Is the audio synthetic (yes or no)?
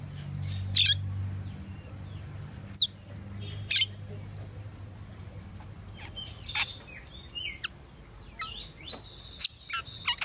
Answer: no